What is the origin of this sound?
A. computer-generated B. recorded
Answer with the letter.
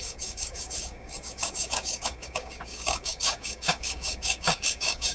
A